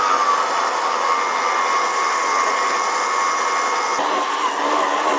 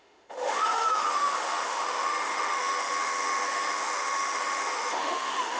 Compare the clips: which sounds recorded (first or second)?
first